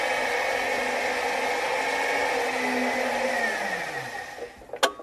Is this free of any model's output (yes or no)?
yes